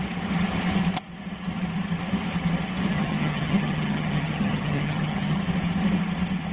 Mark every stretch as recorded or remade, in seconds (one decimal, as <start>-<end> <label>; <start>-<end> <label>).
0.0-2.9 recorded; 2.9-5.4 remade; 5.4-6.5 recorded

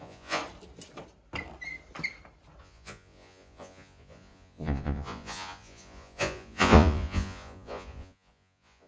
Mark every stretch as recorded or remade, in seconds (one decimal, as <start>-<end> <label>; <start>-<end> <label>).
0.0-0.4 remade; 0.4-2.6 recorded; 2.6-8.9 remade

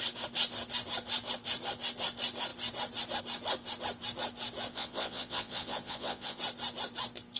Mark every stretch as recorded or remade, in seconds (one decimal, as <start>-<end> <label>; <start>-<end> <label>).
0.0-4.7 recorded; 4.7-6.4 remade; 6.4-7.4 recorded

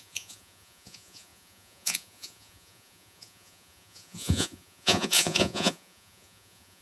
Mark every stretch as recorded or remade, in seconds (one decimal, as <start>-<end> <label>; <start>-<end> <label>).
0.0-6.8 remade

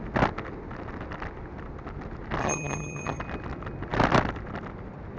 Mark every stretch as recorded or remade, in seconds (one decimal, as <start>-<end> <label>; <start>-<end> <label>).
0.0-2.4 recorded; 2.4-3.2 remade; 3.2-5.2 recorded

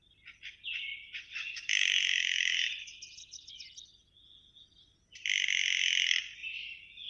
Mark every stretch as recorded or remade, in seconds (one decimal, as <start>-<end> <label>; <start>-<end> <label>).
0.0-6.4 recorded; 6.4-7.1 remade

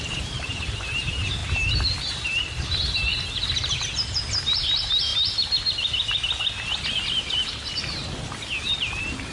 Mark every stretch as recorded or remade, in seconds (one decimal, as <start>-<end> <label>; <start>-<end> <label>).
0.0-5.1 remade; 5.1-8.6 recorded; 8.6-9.3 remade

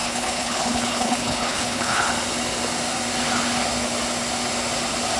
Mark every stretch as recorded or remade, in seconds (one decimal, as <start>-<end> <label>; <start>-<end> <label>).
0.0-2.1 remade; 2.1-5.2 recorded